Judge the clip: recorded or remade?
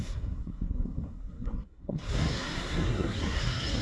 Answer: remade